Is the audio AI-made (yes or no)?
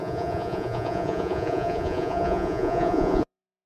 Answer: yes